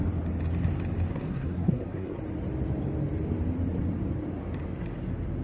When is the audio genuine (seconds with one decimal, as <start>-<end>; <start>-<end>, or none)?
0.0-1.1; 2.2-5.4